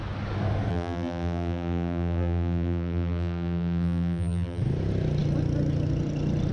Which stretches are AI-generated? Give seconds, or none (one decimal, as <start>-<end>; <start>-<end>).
0.7-4.6